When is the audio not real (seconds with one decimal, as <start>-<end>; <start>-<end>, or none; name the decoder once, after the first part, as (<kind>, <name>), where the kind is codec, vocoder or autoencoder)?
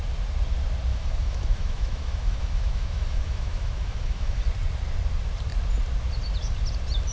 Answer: 0.9-4.4 (autoencoder, DAC-VAE)